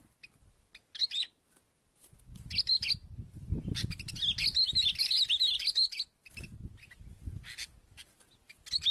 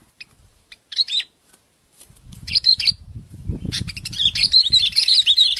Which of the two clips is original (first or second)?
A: first